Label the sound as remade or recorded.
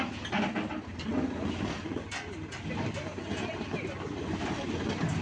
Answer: recorded